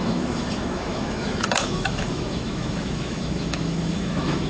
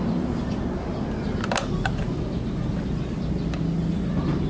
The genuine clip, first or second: second